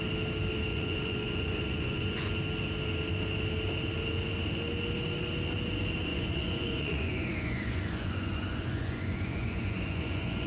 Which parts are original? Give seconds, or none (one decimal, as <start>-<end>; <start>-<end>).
0.0-0.7; 2.3-6.1

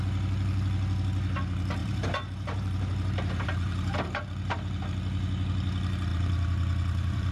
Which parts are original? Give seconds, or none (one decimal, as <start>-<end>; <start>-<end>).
0.0-1.8; 4.8-6.1

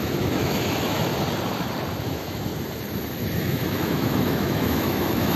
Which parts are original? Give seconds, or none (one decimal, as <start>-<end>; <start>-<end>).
1.1-2.0; 2.5-3.4

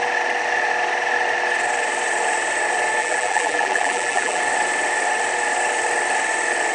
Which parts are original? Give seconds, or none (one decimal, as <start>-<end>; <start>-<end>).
0.0-3.0; 4.4-6.7

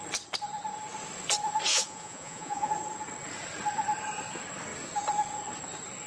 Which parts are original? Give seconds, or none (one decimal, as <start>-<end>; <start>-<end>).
0.0-1.7; 2.7-6.1